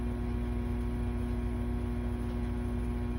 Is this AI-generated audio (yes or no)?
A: no